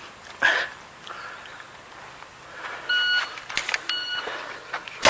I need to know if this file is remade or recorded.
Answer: recorded